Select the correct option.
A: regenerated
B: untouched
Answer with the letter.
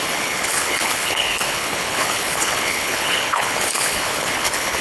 A